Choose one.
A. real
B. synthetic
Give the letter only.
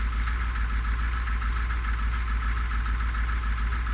A